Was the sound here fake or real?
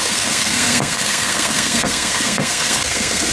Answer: fake